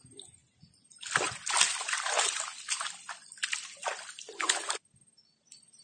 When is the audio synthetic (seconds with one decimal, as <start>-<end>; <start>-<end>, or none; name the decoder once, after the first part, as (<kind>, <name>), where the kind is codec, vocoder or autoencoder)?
none